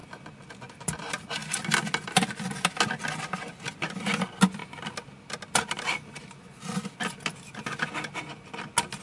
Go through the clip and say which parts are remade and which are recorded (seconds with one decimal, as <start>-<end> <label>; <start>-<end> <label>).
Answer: 0.0-9.0 recorded